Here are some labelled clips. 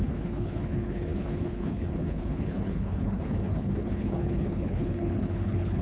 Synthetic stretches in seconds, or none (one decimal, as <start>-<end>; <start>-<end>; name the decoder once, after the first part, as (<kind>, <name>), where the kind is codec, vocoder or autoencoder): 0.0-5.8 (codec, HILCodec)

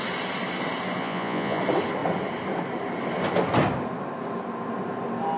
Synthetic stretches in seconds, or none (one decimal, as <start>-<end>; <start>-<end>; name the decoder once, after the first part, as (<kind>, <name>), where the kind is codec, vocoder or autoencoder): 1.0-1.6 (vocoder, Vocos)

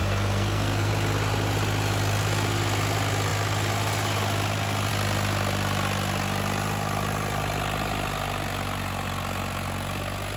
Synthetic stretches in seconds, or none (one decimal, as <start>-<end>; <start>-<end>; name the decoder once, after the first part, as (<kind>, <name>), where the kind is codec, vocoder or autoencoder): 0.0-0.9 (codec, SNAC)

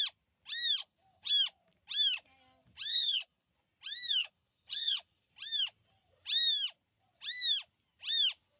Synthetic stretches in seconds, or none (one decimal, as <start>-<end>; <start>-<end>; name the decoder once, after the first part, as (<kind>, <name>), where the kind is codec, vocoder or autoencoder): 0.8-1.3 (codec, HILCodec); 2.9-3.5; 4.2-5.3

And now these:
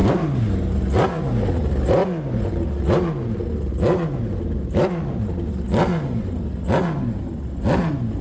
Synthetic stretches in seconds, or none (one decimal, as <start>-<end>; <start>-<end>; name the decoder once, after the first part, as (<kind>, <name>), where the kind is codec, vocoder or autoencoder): none